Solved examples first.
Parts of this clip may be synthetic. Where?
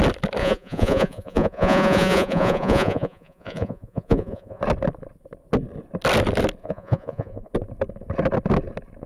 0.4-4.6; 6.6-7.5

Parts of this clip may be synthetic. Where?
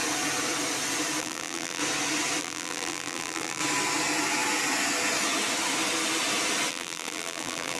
1.2-1.8; 2.4-3.6; 6.7-7.8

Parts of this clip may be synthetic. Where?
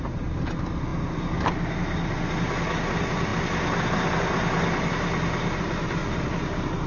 none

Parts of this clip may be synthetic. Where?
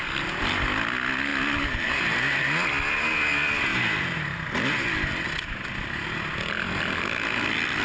none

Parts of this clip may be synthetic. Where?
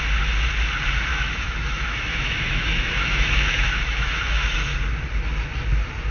1.1-4.8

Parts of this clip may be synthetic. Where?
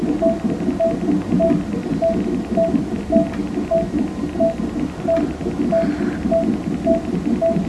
none